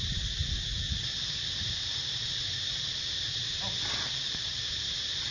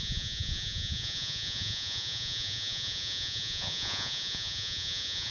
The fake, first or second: second